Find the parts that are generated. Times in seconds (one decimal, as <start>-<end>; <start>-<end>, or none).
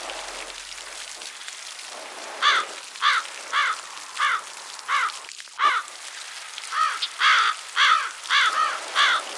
none